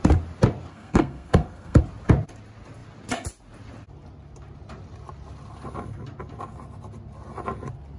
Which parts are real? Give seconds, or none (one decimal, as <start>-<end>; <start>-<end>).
0.0-0.7; 1.8-8.0